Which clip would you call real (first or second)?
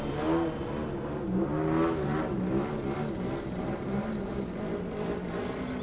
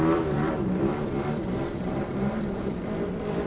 first